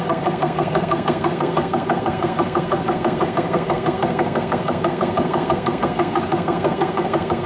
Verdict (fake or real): fake